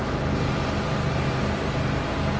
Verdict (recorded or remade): recorded